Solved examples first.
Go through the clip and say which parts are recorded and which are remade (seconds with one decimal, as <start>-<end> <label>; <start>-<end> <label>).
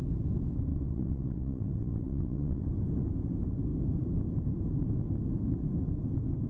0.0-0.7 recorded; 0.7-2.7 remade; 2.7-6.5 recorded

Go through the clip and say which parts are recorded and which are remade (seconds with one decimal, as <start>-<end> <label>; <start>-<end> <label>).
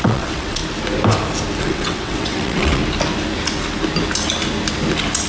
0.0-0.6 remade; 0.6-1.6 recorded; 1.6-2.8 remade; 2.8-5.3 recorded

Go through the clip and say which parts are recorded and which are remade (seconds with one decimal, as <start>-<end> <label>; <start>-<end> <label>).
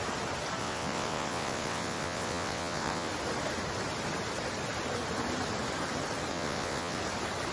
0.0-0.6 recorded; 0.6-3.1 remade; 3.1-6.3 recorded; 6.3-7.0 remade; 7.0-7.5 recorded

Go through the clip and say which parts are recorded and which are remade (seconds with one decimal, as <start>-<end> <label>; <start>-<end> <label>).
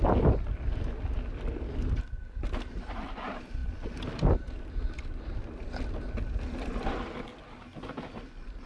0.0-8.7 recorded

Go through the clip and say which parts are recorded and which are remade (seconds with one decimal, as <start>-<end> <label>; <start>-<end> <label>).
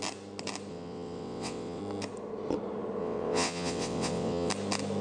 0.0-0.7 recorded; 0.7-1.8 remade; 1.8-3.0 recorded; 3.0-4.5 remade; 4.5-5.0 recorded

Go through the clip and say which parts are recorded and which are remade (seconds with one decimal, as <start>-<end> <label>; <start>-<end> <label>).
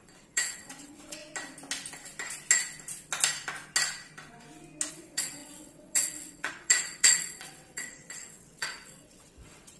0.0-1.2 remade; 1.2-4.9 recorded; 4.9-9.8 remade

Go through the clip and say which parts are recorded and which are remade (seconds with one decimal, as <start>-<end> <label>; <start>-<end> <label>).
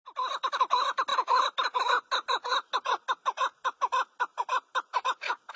0.0-5.6 recorded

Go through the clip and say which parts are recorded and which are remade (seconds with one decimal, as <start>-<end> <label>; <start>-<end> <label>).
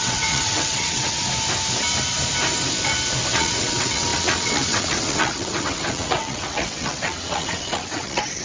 0.0-1.2 remade; 1.2-3.3 recorded; 3.3-8.4 remade